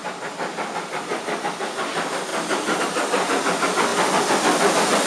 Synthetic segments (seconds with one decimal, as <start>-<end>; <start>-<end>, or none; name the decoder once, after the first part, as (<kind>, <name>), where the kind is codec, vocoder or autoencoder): none